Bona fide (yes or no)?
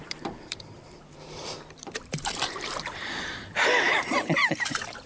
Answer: no